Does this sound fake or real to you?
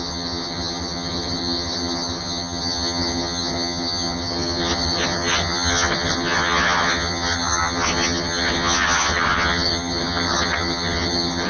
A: fake